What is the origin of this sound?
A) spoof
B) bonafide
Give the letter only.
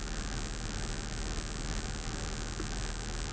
B